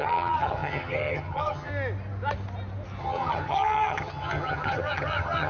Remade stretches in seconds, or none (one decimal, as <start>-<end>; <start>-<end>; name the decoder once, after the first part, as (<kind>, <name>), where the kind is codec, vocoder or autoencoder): 0.0-1.7 (vocoder, HiFi-GAN); 3.0-5.5